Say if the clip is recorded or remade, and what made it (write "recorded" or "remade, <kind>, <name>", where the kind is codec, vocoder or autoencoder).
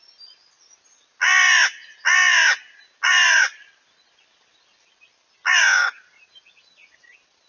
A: recorded